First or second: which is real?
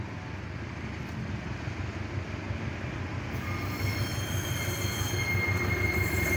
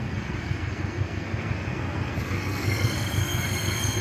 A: first